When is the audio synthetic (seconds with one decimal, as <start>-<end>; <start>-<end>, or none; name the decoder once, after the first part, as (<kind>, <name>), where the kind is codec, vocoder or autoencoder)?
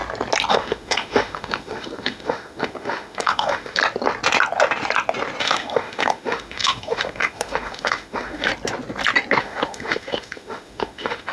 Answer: 0.5-3.8 (autoencoder, DAC-VAE); 5.4-8.5; 9.4-11.3